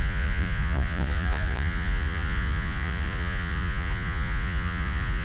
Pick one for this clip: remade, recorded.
remade